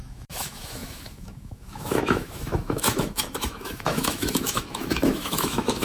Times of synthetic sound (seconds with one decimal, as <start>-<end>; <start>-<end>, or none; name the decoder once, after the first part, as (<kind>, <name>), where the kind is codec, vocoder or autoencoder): 0.0-5.8 (autoencoder, DAC-VAE)